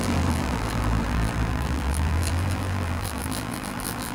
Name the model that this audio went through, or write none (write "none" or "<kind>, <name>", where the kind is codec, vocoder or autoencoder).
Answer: vocoder, BigVGAN v2